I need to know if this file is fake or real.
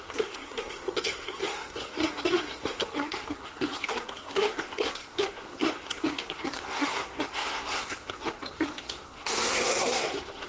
fake